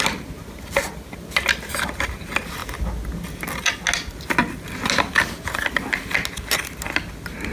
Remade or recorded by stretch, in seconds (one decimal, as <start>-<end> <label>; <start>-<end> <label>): 0.0-7.5 recorded